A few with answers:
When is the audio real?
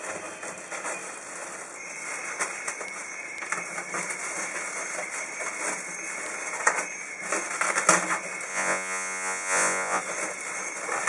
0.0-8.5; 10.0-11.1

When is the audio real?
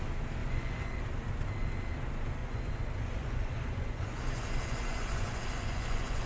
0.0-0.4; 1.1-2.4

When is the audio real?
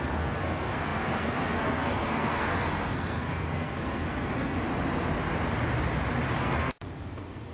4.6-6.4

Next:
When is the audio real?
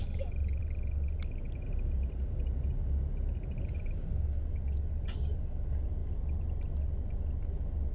0.0-7.9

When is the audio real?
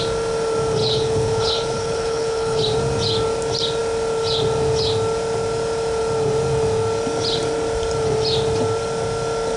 0.0-0.8; 2.6-9.6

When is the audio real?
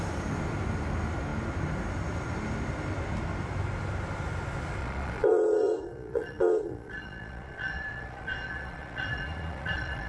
0.0-4.8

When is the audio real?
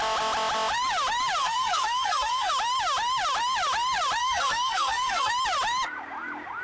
0.0-1.4; 2.5-4.2; 5.3-6.6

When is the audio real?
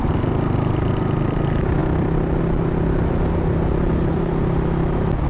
0.0-5.3